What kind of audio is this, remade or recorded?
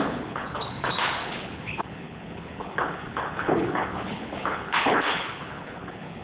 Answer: remade